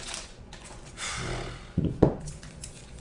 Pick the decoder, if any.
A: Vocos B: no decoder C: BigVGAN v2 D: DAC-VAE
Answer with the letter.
A